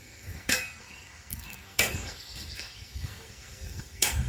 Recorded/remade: remade